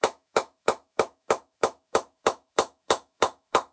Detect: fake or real fake